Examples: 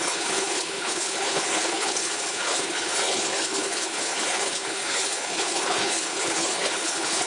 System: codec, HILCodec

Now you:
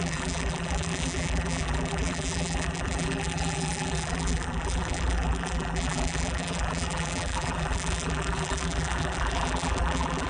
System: vocoder, BigVGAN v2